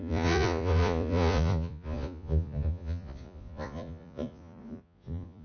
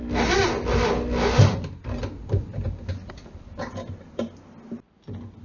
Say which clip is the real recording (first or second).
second